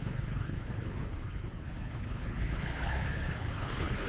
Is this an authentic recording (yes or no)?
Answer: no